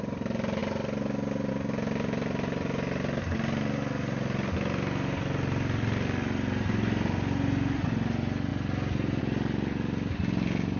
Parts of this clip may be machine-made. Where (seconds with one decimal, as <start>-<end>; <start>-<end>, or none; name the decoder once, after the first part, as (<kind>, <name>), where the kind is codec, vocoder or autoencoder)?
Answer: none